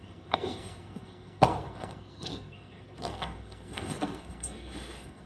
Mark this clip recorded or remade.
remade